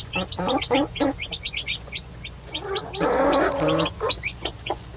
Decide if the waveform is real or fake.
fake